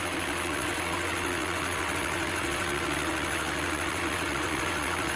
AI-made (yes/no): yes